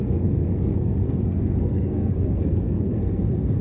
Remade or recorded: remade